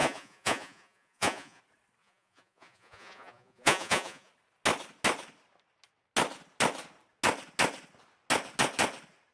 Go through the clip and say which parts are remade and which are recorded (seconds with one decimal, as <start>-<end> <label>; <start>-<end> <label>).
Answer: 0.0-1.6 remade; 1.6-2.0 recorded; 2.0-4.3 remade; 4.3-9.3 recorded